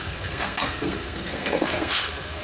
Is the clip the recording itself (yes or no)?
no